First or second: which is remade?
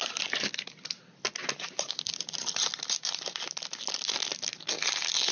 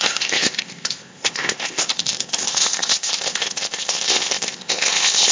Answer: second